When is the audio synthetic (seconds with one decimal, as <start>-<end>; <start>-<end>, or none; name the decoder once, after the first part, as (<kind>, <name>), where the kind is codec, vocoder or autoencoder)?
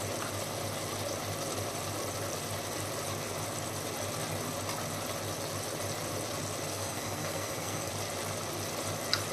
6.7-7.9 (codec, SNAC)